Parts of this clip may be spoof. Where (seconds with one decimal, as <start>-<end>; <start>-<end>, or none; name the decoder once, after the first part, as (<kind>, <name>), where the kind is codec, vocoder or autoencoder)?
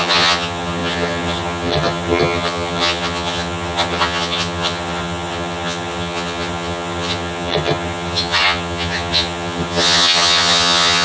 0.0-11.0 (vocoder, HiFi-GAN)